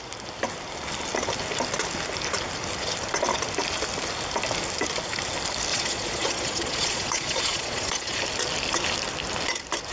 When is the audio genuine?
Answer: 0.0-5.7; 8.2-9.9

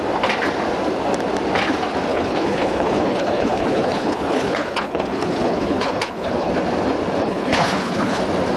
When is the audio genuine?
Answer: 0.0-2.1; 6.5-7.2; 8.2-8.6

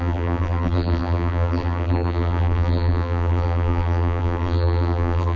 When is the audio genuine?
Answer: none